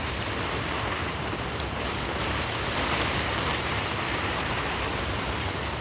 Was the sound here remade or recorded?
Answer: remade